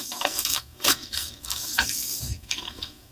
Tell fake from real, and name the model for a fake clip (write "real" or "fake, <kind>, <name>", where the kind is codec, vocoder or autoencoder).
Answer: fake, codec, SNAC